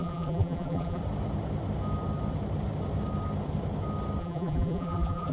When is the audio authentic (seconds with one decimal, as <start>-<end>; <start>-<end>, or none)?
1.0-4.2